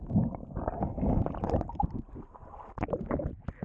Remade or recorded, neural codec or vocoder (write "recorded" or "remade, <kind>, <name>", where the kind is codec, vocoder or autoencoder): recorded